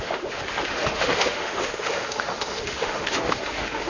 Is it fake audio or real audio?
fake